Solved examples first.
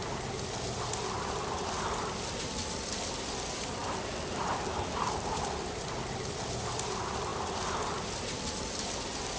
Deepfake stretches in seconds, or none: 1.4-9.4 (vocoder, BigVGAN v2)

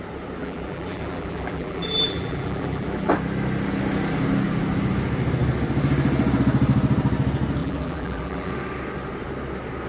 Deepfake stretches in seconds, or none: 0.4-3.1 (vocoder, BigVGAN v2); 7.6-8.5